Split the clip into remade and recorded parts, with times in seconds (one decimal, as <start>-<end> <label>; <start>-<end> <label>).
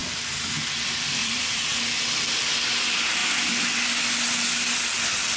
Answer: 0.0-0.6 remade; 0.6-1.2 recorded; 1.2-1.7 remade; 1.7-5.4 recorded